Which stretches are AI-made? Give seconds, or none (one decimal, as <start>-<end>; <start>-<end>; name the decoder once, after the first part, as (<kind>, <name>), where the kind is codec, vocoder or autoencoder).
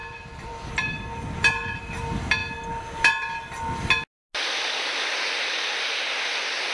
0.0-1.0 (vocoder, BigVGAN v2)